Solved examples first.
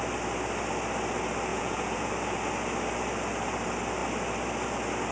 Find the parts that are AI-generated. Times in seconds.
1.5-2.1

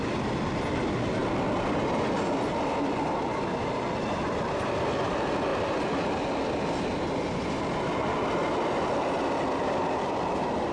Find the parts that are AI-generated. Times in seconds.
none

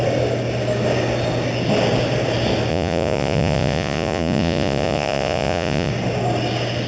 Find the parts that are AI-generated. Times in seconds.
2.7-5.9

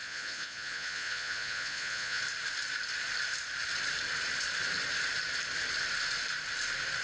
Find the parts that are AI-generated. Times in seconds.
0.0-2.2

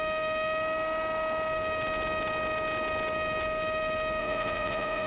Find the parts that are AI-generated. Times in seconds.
4.2-5.1